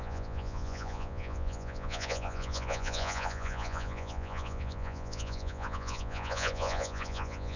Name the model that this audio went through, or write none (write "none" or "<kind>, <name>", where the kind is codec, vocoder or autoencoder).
vocoder, Vocos